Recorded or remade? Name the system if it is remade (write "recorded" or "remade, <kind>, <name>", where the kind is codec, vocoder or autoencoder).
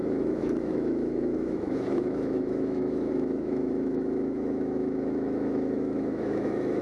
remade, autoencoder, DAC-VAE